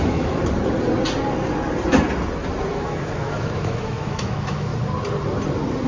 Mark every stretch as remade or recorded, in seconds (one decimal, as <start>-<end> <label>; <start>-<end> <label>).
0.0-0.4 remade; 0.4-2.7 recorded; 2.7-4.7 remade; 4.7-5.9 recorded